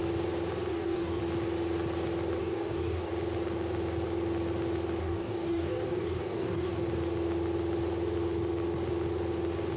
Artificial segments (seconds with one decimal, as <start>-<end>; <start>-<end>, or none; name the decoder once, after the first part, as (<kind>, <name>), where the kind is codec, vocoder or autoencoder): 0.7-1.2 (codec, DAC); 2.4-3.1; 5.0-6.7

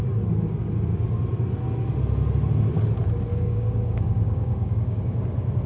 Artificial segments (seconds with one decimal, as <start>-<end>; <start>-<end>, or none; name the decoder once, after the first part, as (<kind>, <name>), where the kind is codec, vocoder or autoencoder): 3.3-5.0 (codec, DAC)

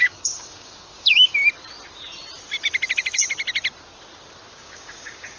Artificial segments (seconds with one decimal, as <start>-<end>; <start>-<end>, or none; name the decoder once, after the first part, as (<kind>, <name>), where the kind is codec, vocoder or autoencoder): 0.0-1.3 (codec, DAC); 4.5-5.4

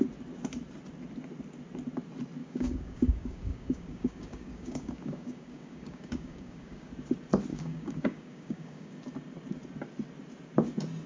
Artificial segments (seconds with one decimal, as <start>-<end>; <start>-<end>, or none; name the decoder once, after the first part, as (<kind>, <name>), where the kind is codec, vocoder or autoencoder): 2.4-6.9 (codec, DAC); 7.5-9.0

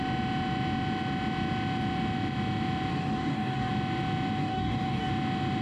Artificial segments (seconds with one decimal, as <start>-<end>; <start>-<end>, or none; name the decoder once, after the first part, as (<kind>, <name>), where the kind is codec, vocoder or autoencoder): 2.9-3.7 (codec, DAC); 4.4-5.1

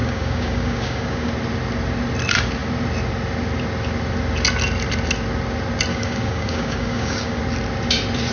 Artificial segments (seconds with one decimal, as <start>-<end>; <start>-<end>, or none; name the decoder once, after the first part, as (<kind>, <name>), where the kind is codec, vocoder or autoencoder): 0.0-1.3 (codec, DAC); 5.9-7.4

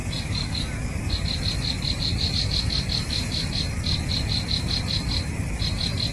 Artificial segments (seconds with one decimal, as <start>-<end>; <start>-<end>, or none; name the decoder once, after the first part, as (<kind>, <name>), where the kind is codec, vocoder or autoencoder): 0.0-1.1 (codec, DAC)